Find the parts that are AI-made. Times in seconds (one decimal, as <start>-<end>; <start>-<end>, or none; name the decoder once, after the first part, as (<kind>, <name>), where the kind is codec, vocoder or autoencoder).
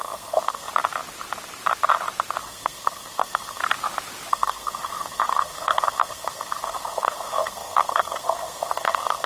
0.0-0.7 (codec, SNAC); 2.4-3.6; 4.3-9.3